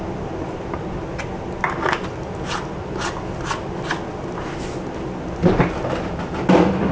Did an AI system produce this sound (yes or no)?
no